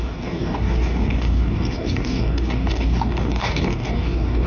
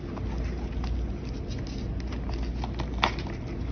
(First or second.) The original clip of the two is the second